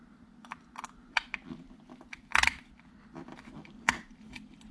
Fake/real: fake